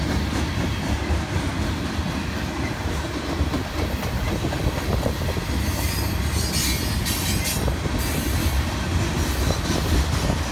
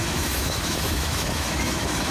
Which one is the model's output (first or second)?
second